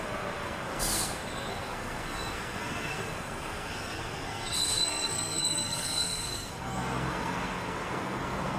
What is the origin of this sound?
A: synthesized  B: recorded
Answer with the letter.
A